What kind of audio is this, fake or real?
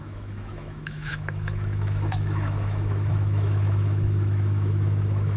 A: fake